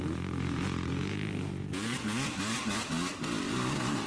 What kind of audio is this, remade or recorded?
recorded